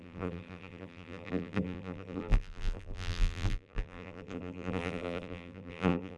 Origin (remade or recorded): remade